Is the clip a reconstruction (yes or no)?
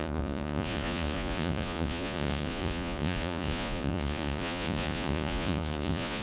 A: yes